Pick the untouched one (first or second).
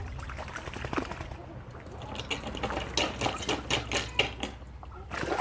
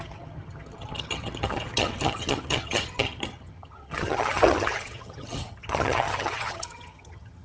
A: first